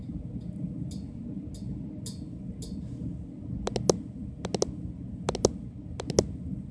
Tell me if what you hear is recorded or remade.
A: recorded